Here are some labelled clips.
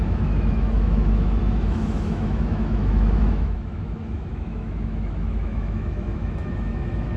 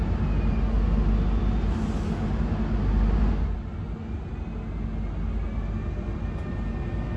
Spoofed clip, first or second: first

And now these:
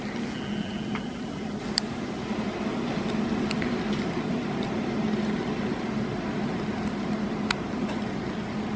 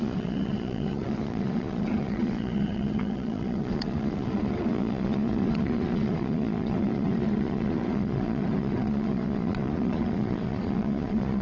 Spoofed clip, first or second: second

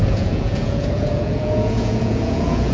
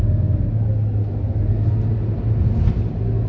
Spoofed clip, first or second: first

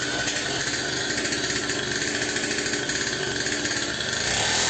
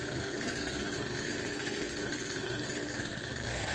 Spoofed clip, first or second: second